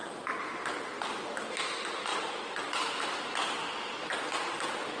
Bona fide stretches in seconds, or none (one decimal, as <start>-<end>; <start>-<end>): 0.0-5.0